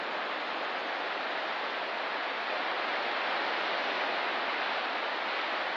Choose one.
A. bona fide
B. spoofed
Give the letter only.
A